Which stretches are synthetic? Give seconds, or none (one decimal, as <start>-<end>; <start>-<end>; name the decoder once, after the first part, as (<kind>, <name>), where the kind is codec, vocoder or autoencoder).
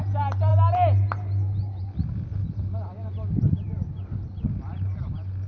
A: none